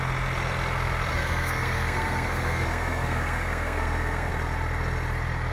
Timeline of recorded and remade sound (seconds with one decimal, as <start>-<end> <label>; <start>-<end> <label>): 0.0-1.1 recorded; 1.1-4.3 remade; 4.3-5.5 recorded